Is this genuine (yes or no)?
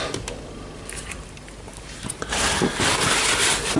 yes